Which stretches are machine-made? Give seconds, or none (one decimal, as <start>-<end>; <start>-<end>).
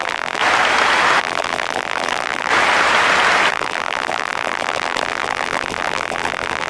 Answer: 0.0-0.4; 1.2-2.5; 3.5-6.7